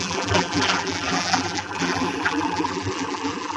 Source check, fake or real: fake